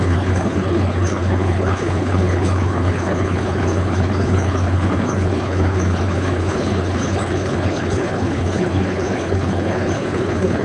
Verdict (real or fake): fake